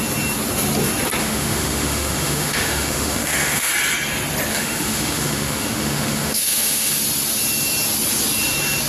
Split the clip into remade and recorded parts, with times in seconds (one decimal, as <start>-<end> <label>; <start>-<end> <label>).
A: 0.0-1.2 recorded; 1.2-3.7 remade; 3.7-4.5 recorded; 4.5-6.9 remade; 6.9-8.9 recorded